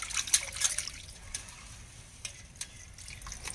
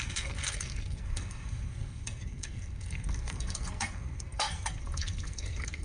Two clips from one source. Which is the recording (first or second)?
first